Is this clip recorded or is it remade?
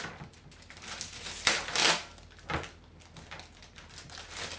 recorded